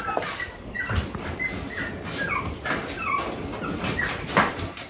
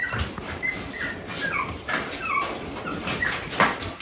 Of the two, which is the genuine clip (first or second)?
first